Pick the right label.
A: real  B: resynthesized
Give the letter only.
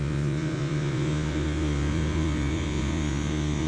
B